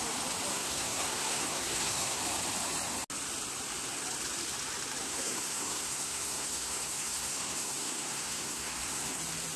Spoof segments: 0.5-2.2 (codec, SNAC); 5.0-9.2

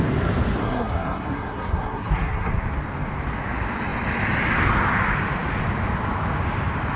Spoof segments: 0.6-2.5 (codec, SNAC)

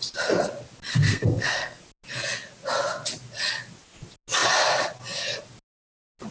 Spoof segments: 0.9-1.8 (codec, SNAC)

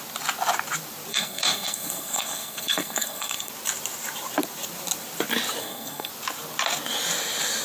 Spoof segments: 1.1-3.5 (codec, SNAC); 5.6-6.1

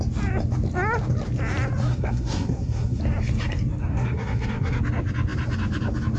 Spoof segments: 1.9-3.0 (codec, SNAC); 3.9-4.8